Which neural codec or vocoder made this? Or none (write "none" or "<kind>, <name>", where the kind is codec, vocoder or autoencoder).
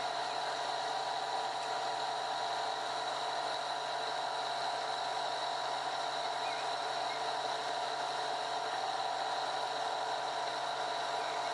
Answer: none